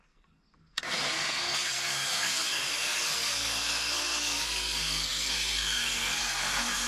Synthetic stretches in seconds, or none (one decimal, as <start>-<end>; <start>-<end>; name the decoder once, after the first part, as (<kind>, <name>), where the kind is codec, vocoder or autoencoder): 0.0-6.9 (codec, SNAC)